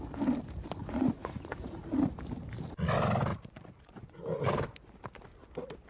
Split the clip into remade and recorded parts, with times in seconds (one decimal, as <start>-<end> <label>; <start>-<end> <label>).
0.0-0.8 recorded; 0.8-2.0 remade; 2.0-3.3 recorded; 3.3-4.4 remade; 4.4-5.9 recorded

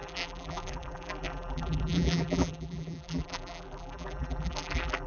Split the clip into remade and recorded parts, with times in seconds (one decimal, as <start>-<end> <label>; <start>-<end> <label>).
0.0-5.1 remade

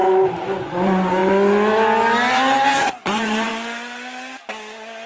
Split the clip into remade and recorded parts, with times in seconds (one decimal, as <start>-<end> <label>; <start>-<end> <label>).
0.0-0.6 recorded; 0.6-1.2 remade; 1.2-2.8 recorded; 2.8-3.5 remade; 3.5-5.1 recorded

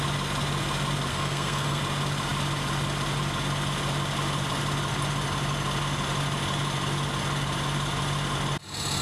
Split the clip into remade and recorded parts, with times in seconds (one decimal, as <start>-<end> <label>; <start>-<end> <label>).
0.0-1.1 recorded; 1.1-1.8 remade; 1.8-9.0 recorded